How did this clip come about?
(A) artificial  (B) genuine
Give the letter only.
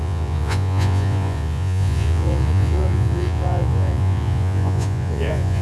A